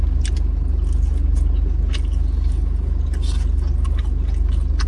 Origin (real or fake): real